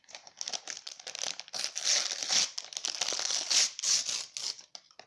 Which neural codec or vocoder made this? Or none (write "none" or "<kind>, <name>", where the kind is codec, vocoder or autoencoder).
none